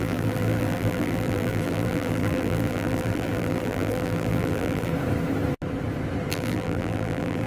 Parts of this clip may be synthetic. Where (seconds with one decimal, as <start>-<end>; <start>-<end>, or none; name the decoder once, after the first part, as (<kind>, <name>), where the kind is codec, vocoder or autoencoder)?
0.0-4.9 (vocoder, BigVGAN v2); 6.3-7.5